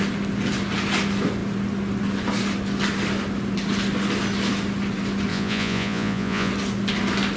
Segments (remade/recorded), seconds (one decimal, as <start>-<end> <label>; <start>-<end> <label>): 0.0-5.3 recorded; 5.3-6.5 remade; 6.5-7.4 recorded